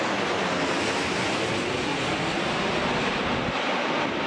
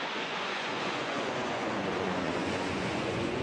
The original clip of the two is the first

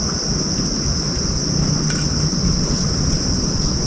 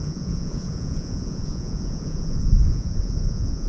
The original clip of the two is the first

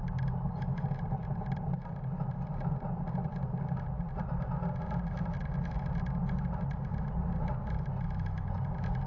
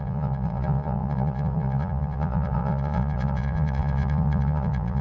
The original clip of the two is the first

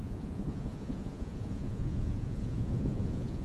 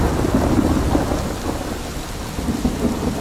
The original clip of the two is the second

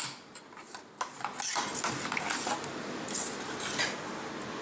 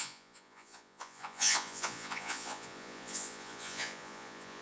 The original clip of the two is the first